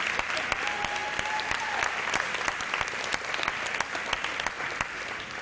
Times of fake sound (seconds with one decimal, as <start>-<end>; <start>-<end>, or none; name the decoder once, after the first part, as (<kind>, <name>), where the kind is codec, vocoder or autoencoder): none